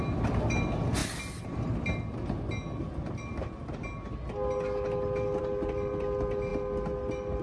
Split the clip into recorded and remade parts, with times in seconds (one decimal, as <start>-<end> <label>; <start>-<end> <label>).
0.0-7.4 recorded

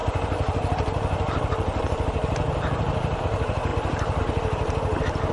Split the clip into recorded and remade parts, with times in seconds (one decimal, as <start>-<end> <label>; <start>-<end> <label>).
0.0-3.2 remade; 3.2-3.7 recorded; 3.7-4.2 remade; 4.2-5.3 recorded

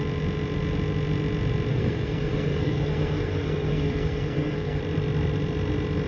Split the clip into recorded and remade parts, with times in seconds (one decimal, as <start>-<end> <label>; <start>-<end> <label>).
0.0-1.7 recorded; 1.7-4.8 remade; 4.8-6.1 recorded

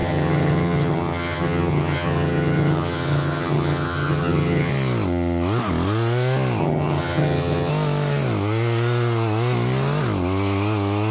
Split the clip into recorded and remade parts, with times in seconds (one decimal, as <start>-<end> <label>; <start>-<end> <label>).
0.0-4.7 remade; 4.7-6.6 recorded; 6.6-7.7 remade; 7.7-11.1 recorded